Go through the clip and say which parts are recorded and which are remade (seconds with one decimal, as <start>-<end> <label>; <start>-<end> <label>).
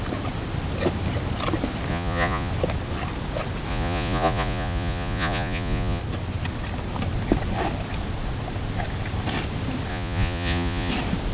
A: 0.0-1.9 recorded; 1.9-2.5 remade; 2.5-3.7 recorded; 3.7-6.0 remade; 6.0-9.9 recorded; 9.9-10.9 remade; 10.9-11.3 recorded